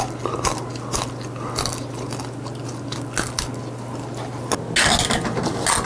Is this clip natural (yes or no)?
yes